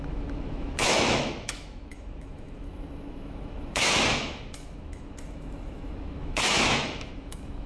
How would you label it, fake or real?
fake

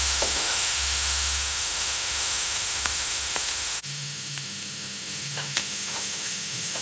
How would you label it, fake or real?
fake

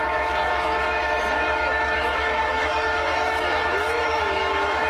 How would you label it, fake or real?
fake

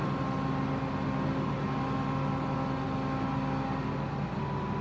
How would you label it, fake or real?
real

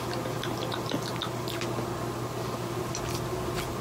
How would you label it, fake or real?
real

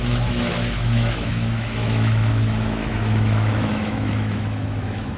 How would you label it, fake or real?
fake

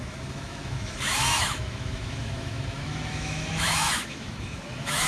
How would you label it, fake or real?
fake